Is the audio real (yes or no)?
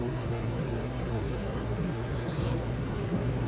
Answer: no